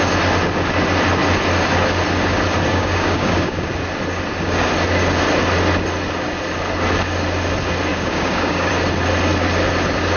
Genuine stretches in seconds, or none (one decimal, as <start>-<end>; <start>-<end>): 0.0-2.7; 3.7-7.9; 8.7-10.2